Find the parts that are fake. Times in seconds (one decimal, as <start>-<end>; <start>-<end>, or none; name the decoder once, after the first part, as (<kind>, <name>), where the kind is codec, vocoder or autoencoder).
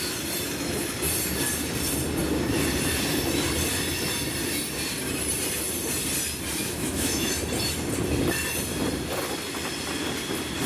6.6-7.3 (autoencoder, DAC-VAE)